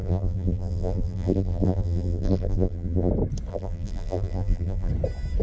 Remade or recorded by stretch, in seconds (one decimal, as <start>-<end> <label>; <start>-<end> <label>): 0.0-3.1 remade; 3.1-3.5 recorded; 3.5-4.9 remade; 4.9-5.4 recorded